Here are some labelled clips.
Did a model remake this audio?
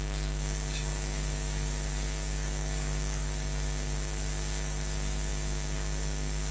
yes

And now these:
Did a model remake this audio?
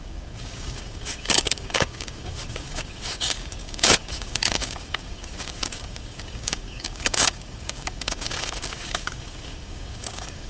yes